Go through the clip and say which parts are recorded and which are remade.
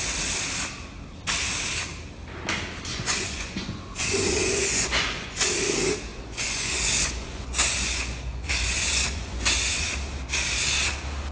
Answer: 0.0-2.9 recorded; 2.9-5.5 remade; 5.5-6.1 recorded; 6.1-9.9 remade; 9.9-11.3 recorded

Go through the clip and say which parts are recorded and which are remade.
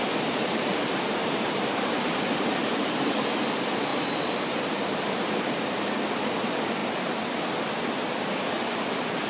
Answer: 0.0-1.2 recorded; 1.2-2.3 remade; 2.3-2.7 recorded; 2.7-3.4 remade; 3.4-3.9 recorded; 3.9-5.5 remade; 5.5-9.3 recorded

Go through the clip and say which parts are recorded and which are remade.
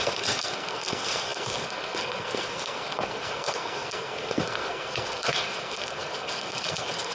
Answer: 0.0-7.1 remade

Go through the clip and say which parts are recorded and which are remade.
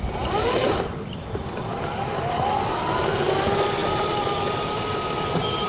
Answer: 0.0-5.7 recorded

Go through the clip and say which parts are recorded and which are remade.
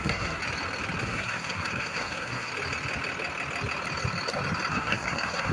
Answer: 0.0-0.4 remade; 0.4-1.0 recorded; 1.0-2.5 remade; 2.5-4.7 recorded; 4.7-5.5 remade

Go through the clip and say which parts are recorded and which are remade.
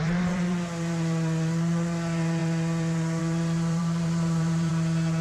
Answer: 0.0-4.7 remade; 4.7-5.2 recorded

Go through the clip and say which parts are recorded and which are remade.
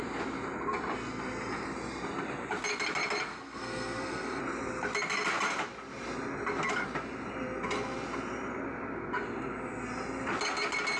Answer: 0.0-3.3 recorded; 3.3-4.4 remade; 4.4-11.0 recorded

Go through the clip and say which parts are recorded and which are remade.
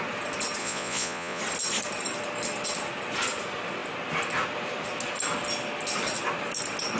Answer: 0.0-0.6 recorded; 0.6-1.4 remade; 1.4-7.0 recorded